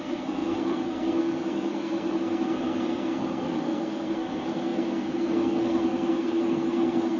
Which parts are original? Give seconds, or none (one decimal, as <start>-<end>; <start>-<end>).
none